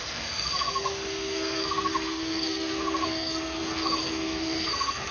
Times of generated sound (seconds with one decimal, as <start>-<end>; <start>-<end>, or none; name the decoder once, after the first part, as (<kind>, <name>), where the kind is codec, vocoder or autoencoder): 0.0-5.1 (codec, SNAC)